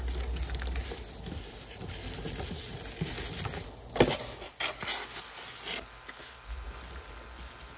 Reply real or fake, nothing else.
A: real